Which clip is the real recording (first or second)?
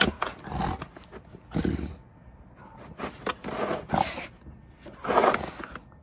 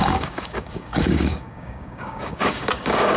first